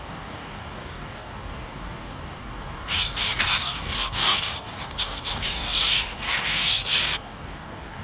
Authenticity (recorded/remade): remade